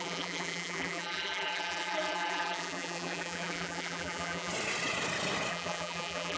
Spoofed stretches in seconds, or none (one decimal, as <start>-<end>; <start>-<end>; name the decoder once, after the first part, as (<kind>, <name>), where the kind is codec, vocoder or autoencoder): 0.0-4.5 (vocoder, BigVGAN v2); 5.5-6.4